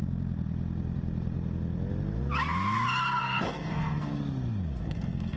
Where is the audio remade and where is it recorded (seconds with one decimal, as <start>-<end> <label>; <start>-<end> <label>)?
0.0-3.2 recorded; 3.2-4.1 remade; 4.1-4.8 recorded; 4.8-5.4 remade